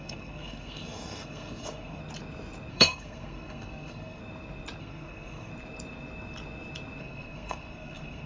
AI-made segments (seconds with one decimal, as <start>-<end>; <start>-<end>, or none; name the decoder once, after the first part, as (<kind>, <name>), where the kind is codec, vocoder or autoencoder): 0.0-2.0 (codec, SNAC); 2.7-4.2; 4.8-5.5; 7.0-8.3